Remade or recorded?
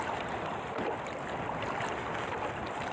recorded